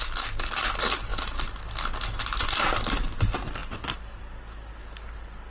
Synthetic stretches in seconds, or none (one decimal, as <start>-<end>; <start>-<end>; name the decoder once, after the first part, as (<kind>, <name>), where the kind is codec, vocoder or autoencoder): none